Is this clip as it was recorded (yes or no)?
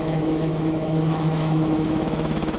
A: no